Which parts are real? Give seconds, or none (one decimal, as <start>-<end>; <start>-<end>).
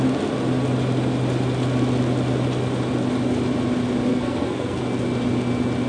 0.0-4.1; 4.8-5.9